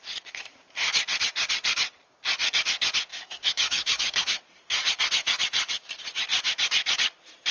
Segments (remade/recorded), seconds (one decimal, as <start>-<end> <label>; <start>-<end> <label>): 0.0-3.1 recorded; 3.1-4.4 remade; 4.4-7.5 recorded